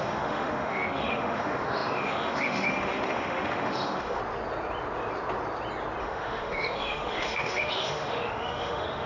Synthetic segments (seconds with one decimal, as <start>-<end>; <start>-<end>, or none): 0.0-4.2; 6.0-9.1

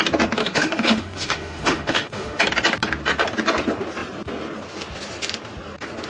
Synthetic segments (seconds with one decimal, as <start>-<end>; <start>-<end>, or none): 0.4-2.4

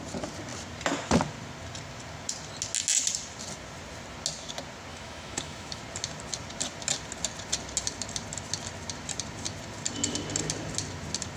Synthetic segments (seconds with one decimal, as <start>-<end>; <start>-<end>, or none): 4.9-5.8

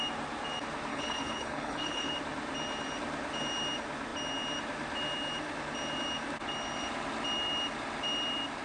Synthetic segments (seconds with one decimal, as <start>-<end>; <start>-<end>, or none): 0.9-2.1

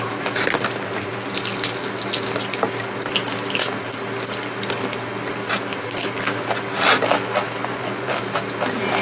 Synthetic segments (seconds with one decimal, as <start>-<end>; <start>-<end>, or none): 7.6-8.1

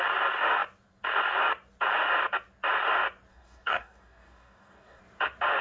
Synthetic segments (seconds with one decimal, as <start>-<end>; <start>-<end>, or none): 3.3-5.0

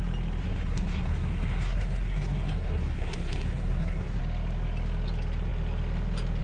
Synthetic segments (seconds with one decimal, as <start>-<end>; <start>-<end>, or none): 0.4-4.2

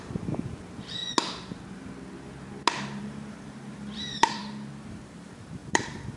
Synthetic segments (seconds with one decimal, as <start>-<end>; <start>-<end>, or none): 0.0-1.0; 3.0-4.4; 4.9-6.2